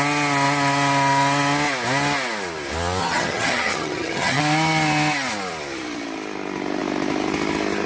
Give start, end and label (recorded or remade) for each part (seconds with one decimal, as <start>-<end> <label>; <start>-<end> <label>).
0.0-3.0 recorded; 3.0-4.4 remade; 4.4-7.9 recorded